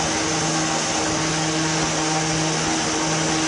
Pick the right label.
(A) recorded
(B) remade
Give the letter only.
A